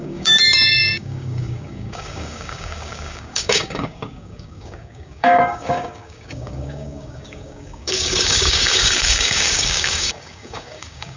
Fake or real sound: fake